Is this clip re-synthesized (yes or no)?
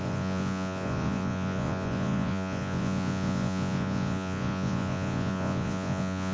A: yes